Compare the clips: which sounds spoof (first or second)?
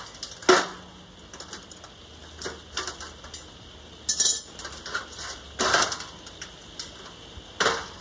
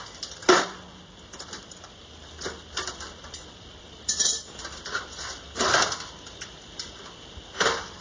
second